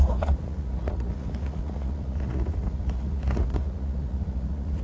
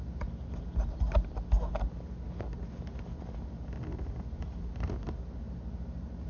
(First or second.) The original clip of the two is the second